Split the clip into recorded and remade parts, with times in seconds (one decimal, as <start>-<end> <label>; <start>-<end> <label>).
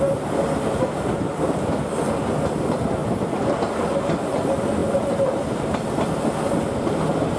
0.0-7.4 recorded